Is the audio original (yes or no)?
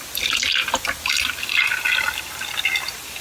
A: yes